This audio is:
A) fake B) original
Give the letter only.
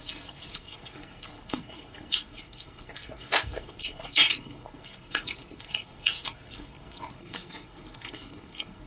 A